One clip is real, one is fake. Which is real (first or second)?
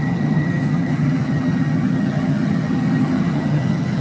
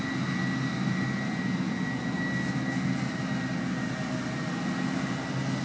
second